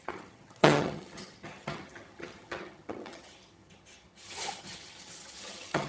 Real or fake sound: fake